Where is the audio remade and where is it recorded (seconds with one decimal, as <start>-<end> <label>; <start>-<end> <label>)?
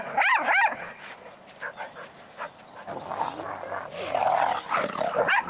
0.0-1.2 recorded; 1.2-2.6 remade; 2.6-5.5 recorded